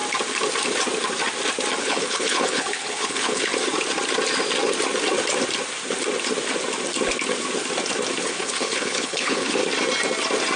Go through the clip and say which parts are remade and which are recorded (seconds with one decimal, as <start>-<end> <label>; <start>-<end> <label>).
0.0-1.8 recorded; 1.8-3.5 remade; 3.5-8.2 recorded; 8.2-9.6 remade; 9.6-10.6 recorded